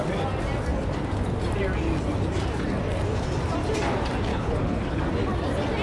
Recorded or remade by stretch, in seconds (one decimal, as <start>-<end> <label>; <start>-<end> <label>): 0.0-4.3 recorded; 4.3-5.0 remade; 5.0-5.8 recorded